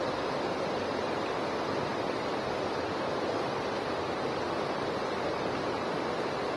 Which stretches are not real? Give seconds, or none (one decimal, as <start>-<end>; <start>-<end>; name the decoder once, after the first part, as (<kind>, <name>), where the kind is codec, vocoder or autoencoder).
0.0-6.6 (vocoder, BigVGAN v2)